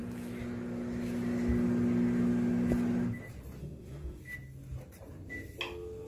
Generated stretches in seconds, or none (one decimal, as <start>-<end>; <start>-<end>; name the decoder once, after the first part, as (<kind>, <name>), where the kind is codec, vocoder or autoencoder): 3.6-4.2 (autoencoder, DAC-VAE)